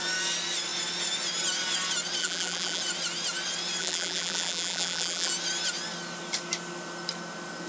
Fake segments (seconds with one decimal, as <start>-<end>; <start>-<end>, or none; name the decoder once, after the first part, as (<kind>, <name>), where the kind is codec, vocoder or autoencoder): 2.2-2.8 (vocoder, BigVGAN v2); 3.8-5.3